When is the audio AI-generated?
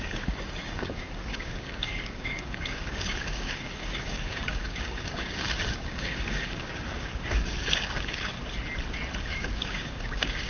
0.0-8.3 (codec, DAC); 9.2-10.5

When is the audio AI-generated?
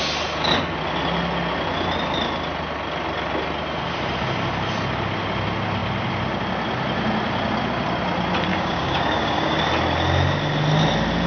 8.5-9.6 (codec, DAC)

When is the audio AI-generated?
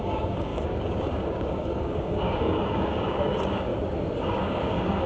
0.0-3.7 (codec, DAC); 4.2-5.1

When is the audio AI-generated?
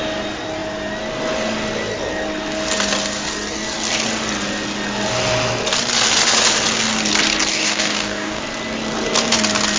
7.5-8.4 (codec, DAC)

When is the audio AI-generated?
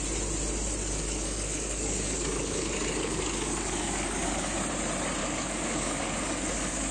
0.8-4.5 (codec, DAC); 5.2-6.9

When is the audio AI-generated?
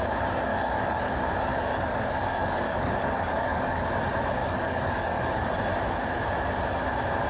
0.5-1.1 (codec, DAC); 1.5-3.9; 4.4-5.5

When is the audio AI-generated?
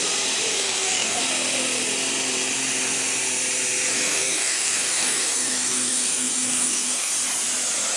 0.5-1.2 (codec, DAC); 3.9-7.1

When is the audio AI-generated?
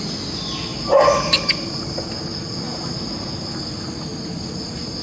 none